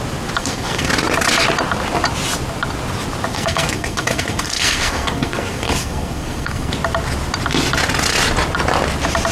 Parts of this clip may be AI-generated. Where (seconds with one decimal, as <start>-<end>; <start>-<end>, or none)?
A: 0.4-0.9; 3.3-6.7